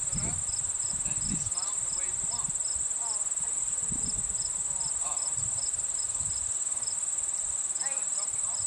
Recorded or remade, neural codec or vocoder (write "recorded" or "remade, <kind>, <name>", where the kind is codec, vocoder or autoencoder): recorded